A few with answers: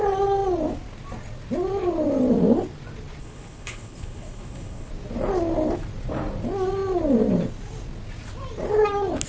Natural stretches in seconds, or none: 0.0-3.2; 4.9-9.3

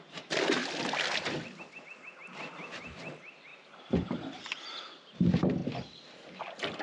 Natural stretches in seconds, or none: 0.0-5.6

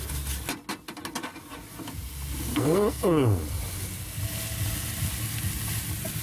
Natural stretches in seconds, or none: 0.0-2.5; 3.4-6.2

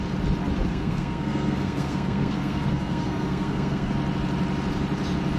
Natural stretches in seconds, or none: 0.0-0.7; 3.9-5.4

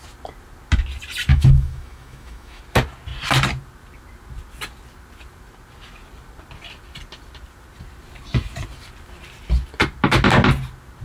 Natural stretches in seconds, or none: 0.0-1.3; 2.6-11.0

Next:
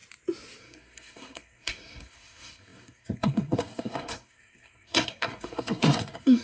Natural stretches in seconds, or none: 0.0-0.6